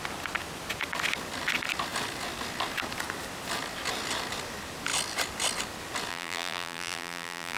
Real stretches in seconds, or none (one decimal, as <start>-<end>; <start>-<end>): 0.0-6.1